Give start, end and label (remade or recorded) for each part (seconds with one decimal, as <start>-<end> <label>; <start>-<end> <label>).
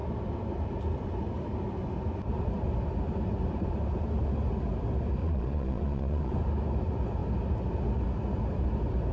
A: 0.0-5.2 recorded; 5.2-6.3 remade; 6.3-9.1 recorded